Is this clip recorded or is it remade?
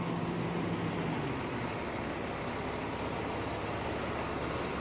recorded